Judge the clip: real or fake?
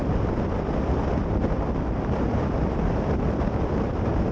real